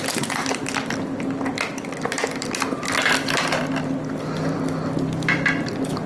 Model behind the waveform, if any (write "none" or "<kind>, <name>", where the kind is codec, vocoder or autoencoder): none